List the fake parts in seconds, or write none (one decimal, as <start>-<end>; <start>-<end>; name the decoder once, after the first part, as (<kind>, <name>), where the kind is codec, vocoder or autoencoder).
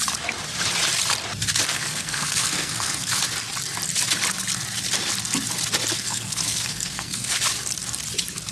1.7-3.2 (codec, SNAC); 5.9-7.4